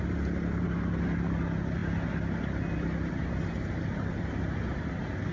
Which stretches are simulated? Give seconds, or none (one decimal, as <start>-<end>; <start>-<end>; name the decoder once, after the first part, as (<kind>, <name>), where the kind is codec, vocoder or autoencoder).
none